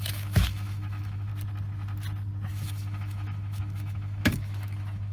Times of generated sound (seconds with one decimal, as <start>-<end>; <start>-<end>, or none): 0.0-1.3; 2.5-5.1